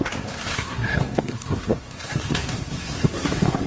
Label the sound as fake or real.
fake